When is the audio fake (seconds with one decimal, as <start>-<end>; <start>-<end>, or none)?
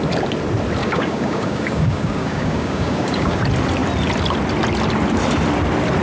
0.8-3.4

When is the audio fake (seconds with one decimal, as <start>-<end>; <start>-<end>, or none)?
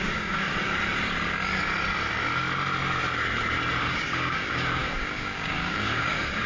0.0-0.5; 3.8-6.5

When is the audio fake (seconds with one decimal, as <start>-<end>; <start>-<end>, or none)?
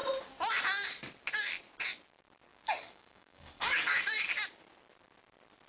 2.5-4.0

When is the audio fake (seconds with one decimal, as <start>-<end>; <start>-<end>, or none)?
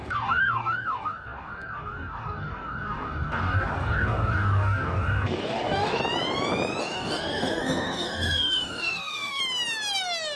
0.0-6.0; 6.8-9.4